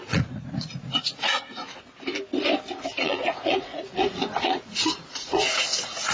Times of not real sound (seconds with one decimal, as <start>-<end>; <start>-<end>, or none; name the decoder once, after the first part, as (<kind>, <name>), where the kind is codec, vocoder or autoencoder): 0.0-1.6 (vocoder, Vocos); 3.0-6.1